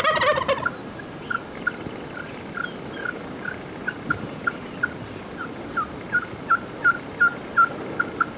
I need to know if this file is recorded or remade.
recorded